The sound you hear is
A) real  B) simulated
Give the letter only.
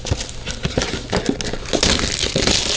A